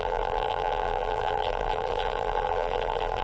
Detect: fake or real fake